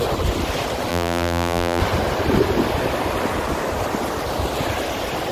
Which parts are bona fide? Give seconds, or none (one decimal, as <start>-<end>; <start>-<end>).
0.0-0.9; 1.8-5.3